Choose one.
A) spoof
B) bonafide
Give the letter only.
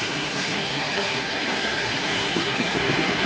A